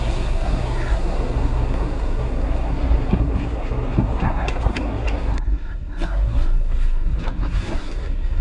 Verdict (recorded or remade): remade